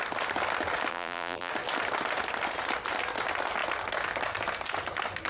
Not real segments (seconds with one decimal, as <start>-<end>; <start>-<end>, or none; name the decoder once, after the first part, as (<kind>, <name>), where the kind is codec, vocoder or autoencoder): 0.9-1.5 (vocoder, BigVGAN v2)